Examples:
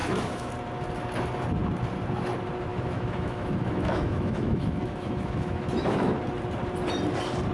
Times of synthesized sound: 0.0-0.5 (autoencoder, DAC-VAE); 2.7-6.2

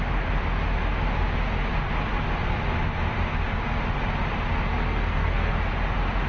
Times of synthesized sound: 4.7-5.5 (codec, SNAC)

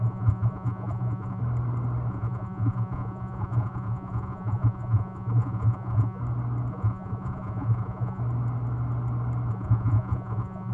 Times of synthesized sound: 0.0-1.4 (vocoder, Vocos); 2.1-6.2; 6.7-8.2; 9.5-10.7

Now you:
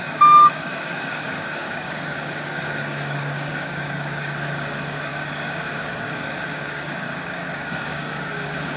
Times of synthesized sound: 0.0-8.8 (codec, DAC)

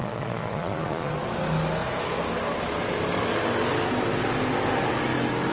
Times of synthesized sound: 0.0-1.1 (vocoder, Vocos)

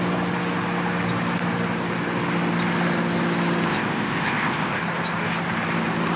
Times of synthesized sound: 3.7-4.8 (codec, ZipCodec)

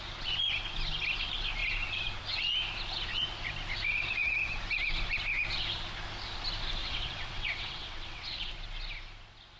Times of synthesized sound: 6.8-8.5 (vocoder, WaveNeXt)

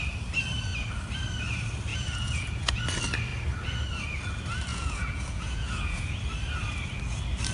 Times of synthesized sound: 1.9-2.8 (vocoder, Vocos); 4.7-6.2